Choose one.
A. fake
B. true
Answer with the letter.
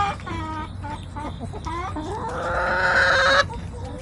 B